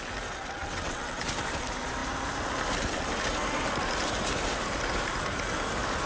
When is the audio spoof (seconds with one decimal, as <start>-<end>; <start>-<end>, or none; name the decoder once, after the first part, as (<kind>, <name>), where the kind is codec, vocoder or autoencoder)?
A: 0.6-1.2 (vocoder, WaveNeXt)